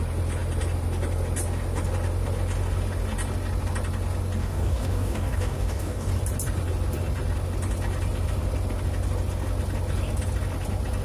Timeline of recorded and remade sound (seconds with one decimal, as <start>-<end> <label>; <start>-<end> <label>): 0.0-4.4 recorded; 4.4-6.1 remade; 6.1-11.0 recorded